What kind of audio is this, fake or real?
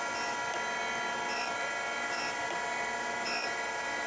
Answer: real